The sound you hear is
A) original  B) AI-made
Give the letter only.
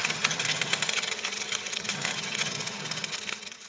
B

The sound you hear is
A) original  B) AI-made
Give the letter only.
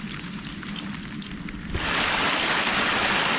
A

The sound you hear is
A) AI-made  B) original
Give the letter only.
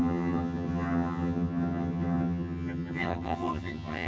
A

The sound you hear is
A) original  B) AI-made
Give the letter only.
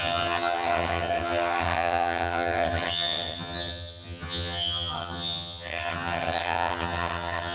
B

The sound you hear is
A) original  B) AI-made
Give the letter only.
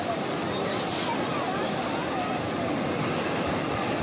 A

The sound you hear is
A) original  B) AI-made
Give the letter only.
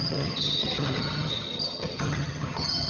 B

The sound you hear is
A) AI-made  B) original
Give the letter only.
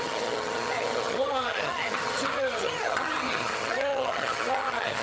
A